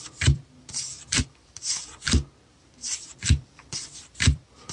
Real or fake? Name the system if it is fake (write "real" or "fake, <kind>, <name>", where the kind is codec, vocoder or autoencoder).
fake, vocoder, BigVGAN v2